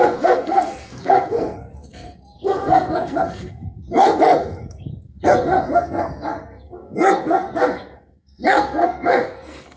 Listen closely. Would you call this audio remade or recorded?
remade